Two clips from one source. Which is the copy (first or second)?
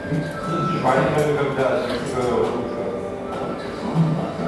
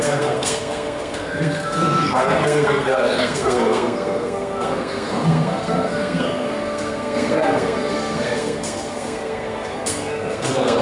second